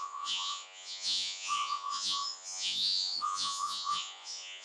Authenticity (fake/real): fake